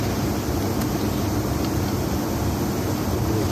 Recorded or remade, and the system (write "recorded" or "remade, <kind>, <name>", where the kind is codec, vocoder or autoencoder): recorded